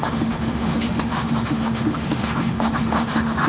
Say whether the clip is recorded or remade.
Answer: remade